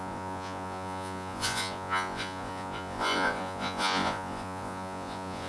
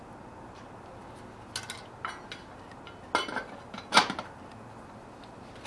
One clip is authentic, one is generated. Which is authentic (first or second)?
second